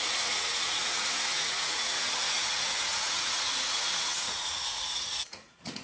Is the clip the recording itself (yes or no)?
no